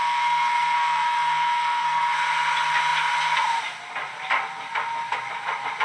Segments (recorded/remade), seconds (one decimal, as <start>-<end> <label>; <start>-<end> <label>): 0.0-2.0 remade; 2.0-5.8 recorded